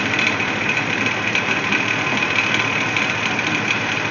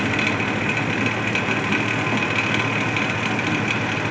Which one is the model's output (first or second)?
first